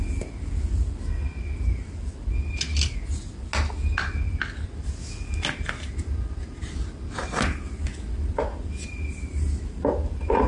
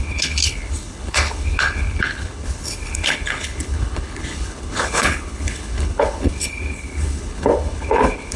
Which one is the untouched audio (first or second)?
first